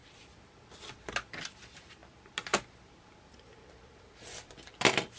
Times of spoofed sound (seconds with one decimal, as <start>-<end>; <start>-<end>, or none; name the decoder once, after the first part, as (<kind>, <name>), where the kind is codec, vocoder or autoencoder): none